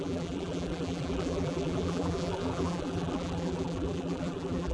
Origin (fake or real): fake